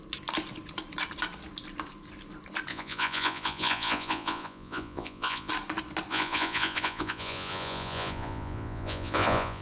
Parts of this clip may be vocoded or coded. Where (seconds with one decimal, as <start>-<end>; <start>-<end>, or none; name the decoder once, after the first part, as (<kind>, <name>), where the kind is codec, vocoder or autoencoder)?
2.7-5.5 (vocoder, Vocos); 6.1-9.6

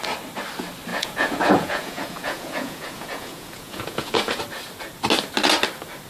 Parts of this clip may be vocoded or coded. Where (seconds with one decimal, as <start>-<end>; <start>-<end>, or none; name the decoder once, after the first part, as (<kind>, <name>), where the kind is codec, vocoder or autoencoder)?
0.9-4.4 (vocoder, Vocos)